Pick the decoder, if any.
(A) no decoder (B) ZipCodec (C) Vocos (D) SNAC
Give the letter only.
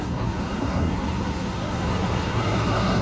D